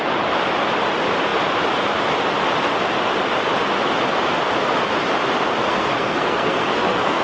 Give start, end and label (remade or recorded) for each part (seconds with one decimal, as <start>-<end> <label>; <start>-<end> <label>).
0.0-5.6 recorded; 5.6-7.2 remade